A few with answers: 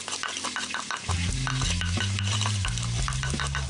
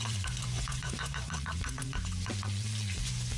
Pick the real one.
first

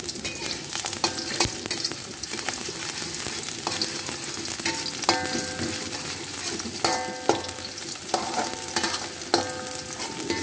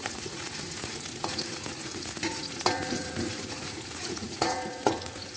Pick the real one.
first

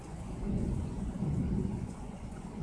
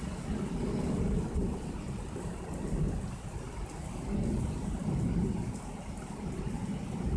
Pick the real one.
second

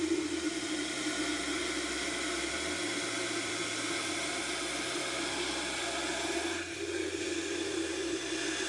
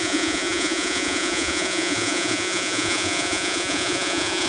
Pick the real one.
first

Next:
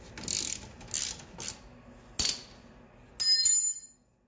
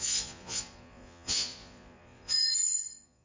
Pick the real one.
first